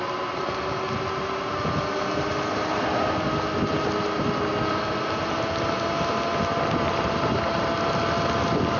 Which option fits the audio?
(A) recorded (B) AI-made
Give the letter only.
A